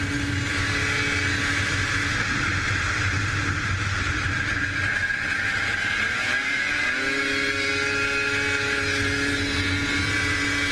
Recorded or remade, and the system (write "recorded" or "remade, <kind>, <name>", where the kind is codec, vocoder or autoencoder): recorded